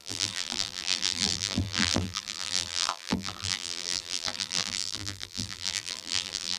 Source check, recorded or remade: remade